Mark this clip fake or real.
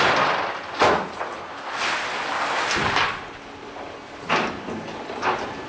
real